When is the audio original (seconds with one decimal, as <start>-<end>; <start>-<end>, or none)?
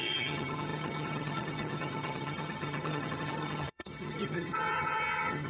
none